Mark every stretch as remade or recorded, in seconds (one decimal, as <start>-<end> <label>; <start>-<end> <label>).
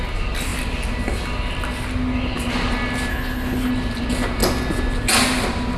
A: 0.0-3.1 recorded; 3.1-3.7 remade; 3.7-5.8 recorded